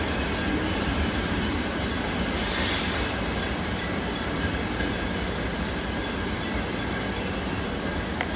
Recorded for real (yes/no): yes